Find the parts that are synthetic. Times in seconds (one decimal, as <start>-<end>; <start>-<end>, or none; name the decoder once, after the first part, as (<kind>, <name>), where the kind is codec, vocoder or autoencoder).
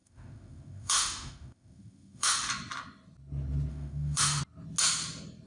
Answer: 0.0-2.5 (autoencoder, DAC-VAE); 3.7-4.4